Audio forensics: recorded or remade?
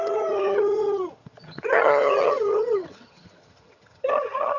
remade